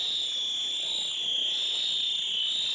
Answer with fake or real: real